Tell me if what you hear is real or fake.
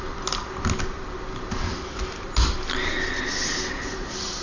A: real